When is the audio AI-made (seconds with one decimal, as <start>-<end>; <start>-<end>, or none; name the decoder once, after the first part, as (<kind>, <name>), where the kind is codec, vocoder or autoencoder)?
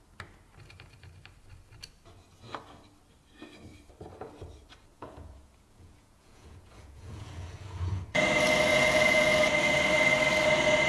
4.9-8.2 (vocoder, Vocos); 8.7-9.5